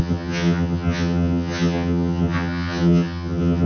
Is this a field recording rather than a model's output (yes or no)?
no